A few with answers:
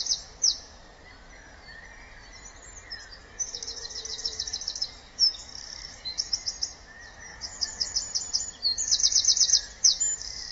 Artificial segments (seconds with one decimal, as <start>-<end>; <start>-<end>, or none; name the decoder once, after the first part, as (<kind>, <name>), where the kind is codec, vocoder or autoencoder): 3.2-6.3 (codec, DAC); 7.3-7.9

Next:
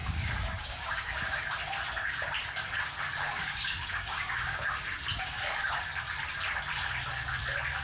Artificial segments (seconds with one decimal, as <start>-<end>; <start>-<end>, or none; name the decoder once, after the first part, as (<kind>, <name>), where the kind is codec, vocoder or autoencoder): 0.0-1.4 (codec, DAC); 3.3-4.8; 5.2-5.9

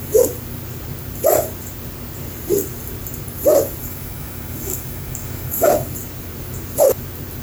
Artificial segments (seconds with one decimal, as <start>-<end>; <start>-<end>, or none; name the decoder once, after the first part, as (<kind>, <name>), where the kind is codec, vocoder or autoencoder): 3.8-5.7 (codec, DAC)